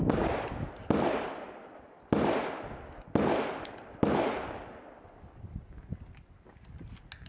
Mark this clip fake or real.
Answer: real